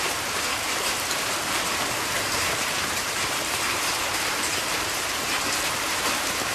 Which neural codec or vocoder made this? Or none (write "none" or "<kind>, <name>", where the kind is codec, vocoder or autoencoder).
vocoder, BigVGAN v2